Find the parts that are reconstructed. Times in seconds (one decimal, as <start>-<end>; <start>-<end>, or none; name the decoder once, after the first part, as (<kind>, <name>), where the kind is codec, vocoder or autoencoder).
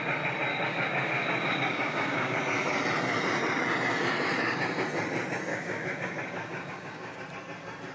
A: 0.5-2.4 (codec, DAC); 5.5-7.2